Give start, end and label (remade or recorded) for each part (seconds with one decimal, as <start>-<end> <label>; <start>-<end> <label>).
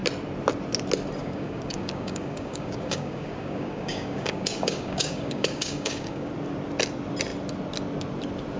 0.0-1.2 recorded; 1.2-6.3 remade; 6.3-8.6 recorded